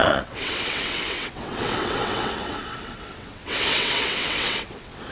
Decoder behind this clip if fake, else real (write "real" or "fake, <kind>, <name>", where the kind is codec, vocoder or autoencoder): fake, vocoder, WaveNeXt